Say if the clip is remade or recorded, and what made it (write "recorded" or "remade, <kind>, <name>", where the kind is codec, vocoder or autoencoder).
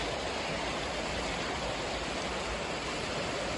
recorded